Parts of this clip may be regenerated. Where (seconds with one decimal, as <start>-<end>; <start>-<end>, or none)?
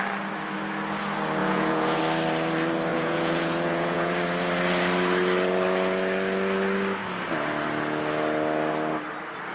1.4-2.0; 2.9-4.1